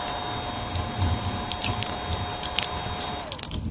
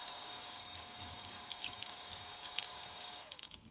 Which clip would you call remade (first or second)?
second